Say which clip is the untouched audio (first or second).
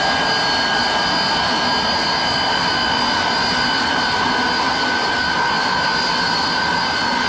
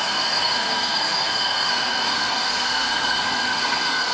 first